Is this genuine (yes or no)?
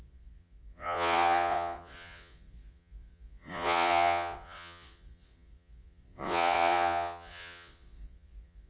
no